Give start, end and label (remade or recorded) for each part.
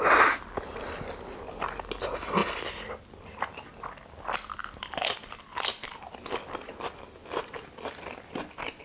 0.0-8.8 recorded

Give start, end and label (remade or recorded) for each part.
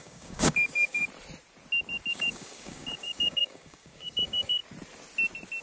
0.0-1.0 remade; 1.0-2.1 recorded; 2.1-4.6 remade; 4.6-5.6 recorded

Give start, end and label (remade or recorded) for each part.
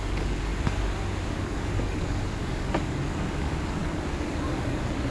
0.0-0.5 remade; 0.5-1.2 recorded; 1.2-5.1 remade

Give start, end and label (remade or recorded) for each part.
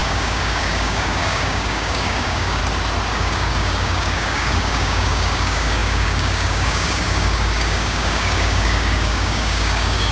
0.0-2.6 remade; 2.6-3.1 recorded; 3.1-10.1 remade